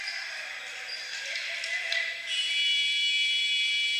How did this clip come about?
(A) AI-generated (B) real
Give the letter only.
A